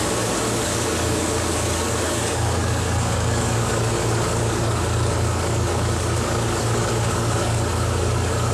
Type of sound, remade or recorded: remade